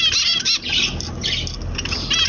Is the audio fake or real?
real